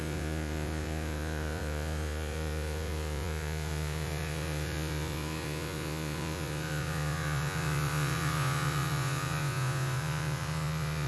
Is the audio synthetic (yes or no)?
yes